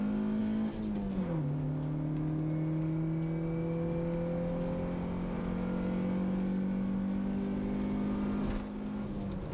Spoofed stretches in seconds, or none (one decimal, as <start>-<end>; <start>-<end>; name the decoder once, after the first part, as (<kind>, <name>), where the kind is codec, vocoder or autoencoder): none